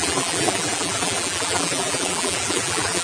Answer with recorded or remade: remade